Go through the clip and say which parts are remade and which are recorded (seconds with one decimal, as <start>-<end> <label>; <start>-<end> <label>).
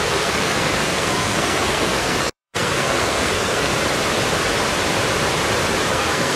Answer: 0.0-3.7 remade; 3.7-5.9 recorded; 5.9-6.4 remade